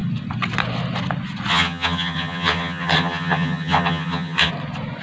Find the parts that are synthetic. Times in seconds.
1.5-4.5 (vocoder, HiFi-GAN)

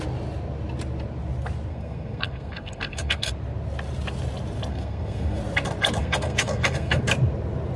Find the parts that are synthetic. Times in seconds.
1.7-3.3 (codec, SNAC); 4.7-5.4; 6.0-7.0

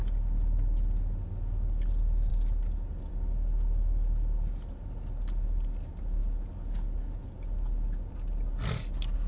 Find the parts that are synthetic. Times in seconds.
none

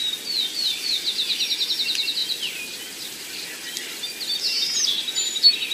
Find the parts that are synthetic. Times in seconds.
none

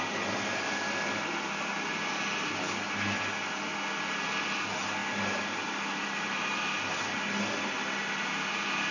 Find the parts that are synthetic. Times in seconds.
none

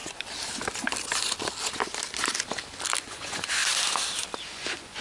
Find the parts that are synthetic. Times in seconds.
3.0-3.6 (vocoder, Vocos); 4.5-5.0

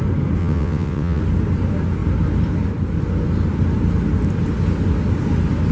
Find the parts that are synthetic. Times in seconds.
0.4-1.2 (vocoder, WaveNeXt)